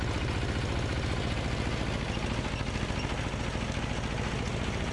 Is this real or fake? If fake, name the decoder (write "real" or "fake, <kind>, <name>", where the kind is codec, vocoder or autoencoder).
real